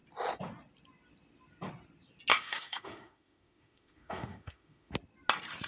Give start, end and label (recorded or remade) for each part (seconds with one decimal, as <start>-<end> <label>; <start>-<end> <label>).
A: 0.0-2.3 recorded; 2.3-4.9 remade; 4.9-5.7 recorded